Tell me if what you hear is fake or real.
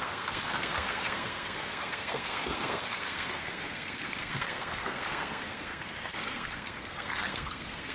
fake